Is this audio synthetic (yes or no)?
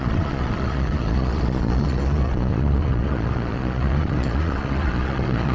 yes